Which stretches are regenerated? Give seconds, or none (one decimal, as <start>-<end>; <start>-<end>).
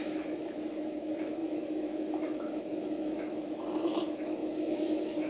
0.0-5.3